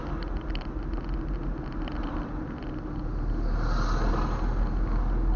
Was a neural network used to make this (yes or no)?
no